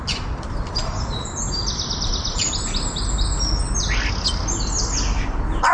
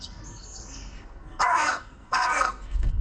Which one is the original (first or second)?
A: first